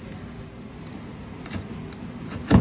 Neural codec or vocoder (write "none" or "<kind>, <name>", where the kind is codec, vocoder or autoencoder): none